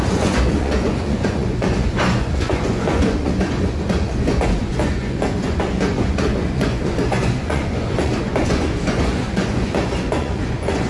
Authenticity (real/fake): fake